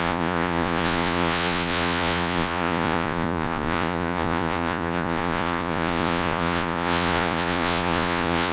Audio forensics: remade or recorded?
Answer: remade